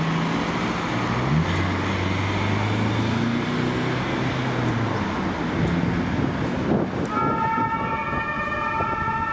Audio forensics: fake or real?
real